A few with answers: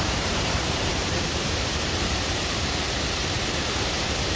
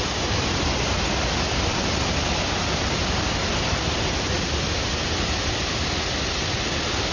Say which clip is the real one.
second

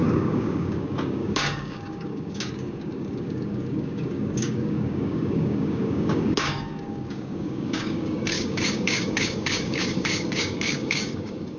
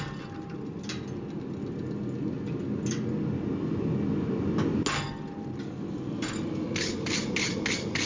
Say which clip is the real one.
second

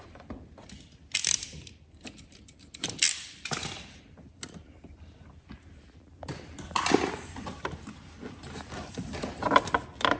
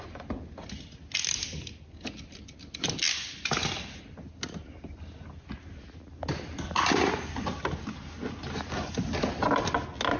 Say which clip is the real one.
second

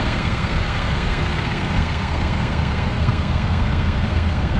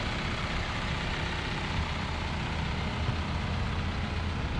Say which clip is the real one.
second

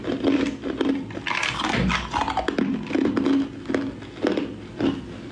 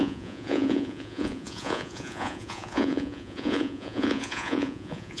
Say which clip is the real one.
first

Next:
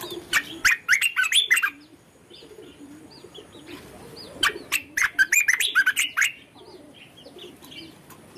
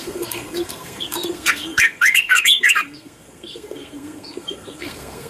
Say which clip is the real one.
first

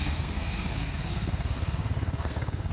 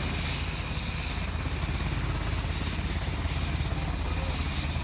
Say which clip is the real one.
second